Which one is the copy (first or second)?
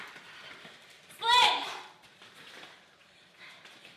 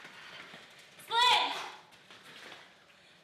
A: first